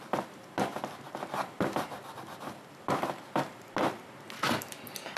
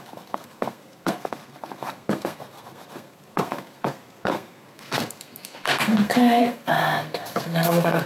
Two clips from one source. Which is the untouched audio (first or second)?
first